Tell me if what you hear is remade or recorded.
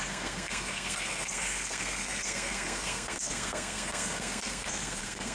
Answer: remade